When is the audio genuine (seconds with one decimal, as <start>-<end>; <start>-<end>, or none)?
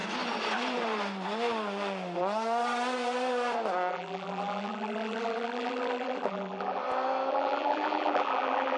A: 0.0-3.9; 6.8-7.3